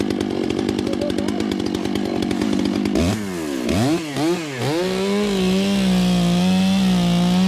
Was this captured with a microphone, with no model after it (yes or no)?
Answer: yes